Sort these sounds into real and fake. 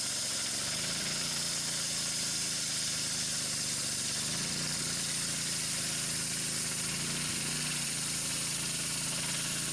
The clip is real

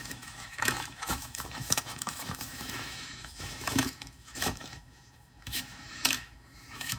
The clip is fake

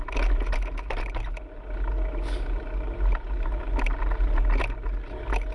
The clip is real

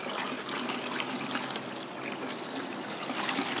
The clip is real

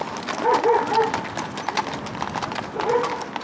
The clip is real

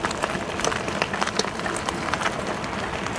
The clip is real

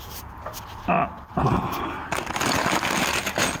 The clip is real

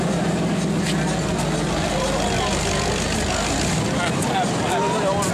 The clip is real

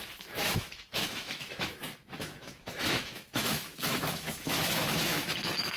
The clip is fake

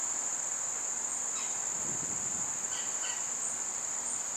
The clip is real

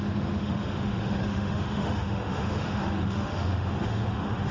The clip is fake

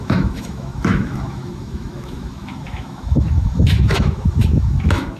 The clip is fake